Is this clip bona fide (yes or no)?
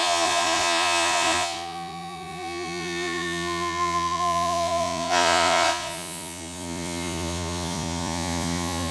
no